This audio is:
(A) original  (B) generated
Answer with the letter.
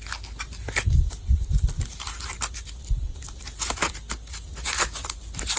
A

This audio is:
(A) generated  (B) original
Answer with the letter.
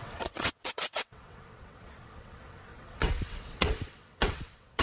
A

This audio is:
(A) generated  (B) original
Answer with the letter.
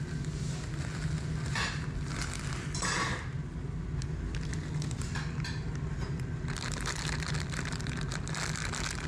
B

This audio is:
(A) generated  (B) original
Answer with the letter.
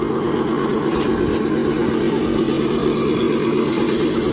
B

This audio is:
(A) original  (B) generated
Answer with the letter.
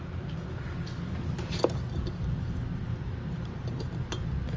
A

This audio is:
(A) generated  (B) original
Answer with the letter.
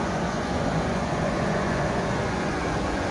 A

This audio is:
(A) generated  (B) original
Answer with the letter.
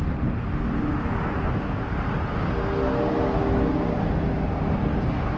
B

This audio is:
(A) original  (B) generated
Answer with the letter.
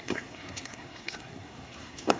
B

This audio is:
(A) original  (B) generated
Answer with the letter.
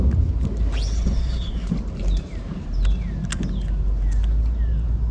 A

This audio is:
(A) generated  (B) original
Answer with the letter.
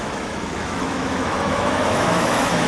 A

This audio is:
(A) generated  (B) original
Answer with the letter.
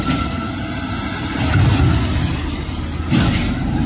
B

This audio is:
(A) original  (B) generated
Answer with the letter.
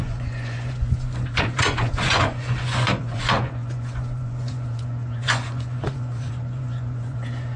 B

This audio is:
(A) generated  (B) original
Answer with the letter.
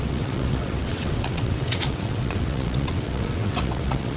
A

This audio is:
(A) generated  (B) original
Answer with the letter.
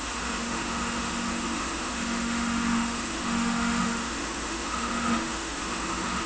A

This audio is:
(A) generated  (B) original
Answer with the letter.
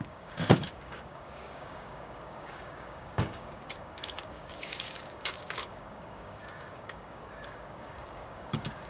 A